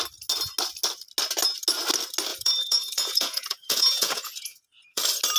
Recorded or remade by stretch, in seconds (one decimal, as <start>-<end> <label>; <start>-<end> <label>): 0.0-2.3 recorded; 2.3-5.0 remade; 5.0-5.4 recorded